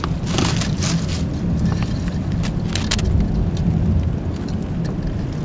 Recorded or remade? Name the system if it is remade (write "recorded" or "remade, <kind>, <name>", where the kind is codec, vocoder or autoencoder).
recorded